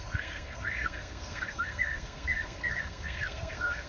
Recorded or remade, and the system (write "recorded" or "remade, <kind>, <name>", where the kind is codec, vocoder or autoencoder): remade, codec, SNAC